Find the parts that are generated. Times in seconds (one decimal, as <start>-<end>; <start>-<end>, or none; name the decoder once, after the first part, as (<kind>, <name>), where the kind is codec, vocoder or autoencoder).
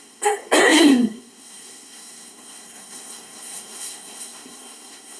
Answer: 0.0-5.2 (codec, SNAC)